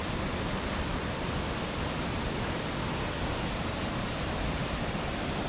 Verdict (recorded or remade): remade